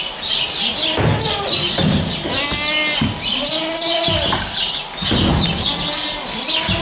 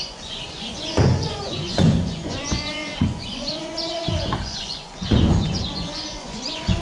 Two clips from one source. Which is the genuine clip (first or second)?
first